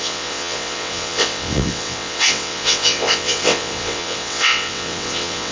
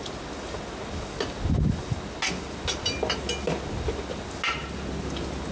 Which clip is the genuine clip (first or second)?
second